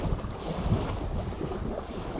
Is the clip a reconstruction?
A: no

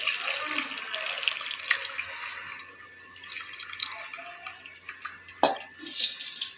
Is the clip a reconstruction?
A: no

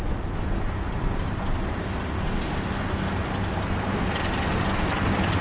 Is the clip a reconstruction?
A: no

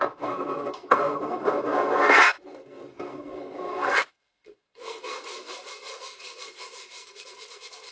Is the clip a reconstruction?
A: yes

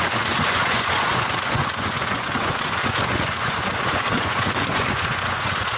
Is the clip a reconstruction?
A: yes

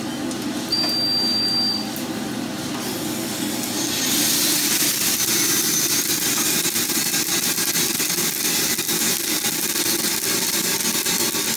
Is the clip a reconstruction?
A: no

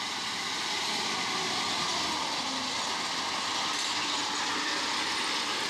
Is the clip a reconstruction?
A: no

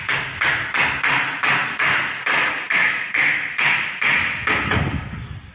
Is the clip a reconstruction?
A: no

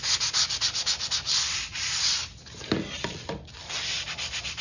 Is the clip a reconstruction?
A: no